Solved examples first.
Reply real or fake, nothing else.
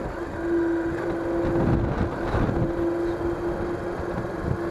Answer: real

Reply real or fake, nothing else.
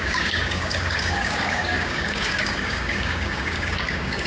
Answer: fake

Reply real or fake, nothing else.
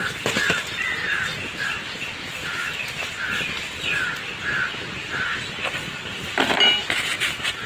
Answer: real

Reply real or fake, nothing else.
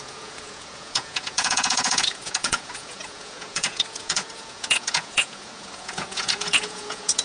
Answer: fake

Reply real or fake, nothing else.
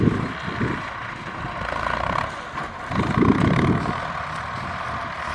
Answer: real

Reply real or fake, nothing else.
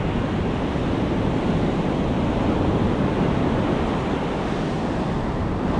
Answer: real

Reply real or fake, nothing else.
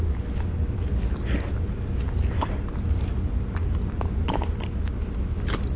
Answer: real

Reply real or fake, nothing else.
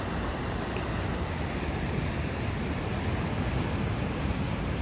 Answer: fake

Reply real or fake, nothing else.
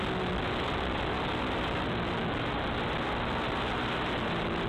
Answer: real